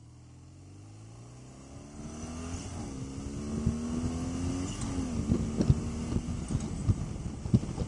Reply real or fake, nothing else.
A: real